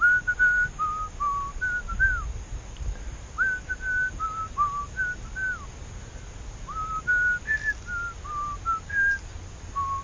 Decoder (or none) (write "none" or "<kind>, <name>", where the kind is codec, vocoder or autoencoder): none